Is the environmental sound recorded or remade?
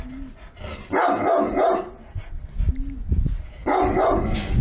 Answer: recorded